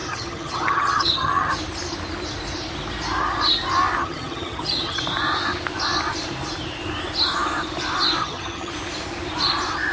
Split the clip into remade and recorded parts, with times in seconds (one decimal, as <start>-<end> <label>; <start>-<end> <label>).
0.0-1.5 remade; 1.5-4.0 recorded; 4.0-5.0 remade; 5.0-8.2 recorded; 8.2-8.7 remade; 8.7-9.9 recorded